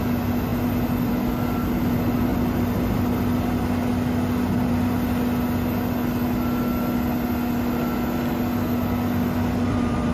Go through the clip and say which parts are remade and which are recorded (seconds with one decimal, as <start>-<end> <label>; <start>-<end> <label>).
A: 0.0-10.1 recorded